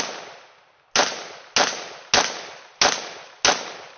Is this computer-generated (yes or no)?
no